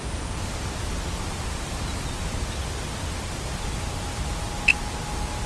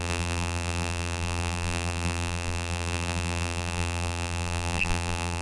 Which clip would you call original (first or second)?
first